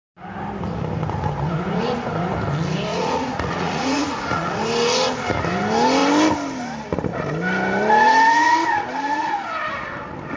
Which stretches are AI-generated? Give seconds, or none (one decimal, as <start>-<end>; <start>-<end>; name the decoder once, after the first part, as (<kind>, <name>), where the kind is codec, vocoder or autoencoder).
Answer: 2.9-4.5 (vocoder, Vocos)